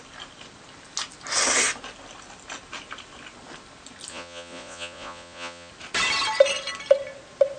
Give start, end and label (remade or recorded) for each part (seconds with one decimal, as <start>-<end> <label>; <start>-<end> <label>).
0.0-4.1 recorded; 4.1-5.7 remade; 5.7-7.6 recorded